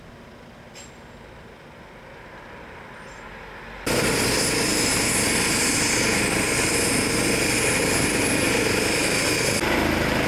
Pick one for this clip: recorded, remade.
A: recorded